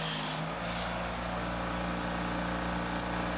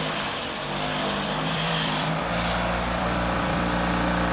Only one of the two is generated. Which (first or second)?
second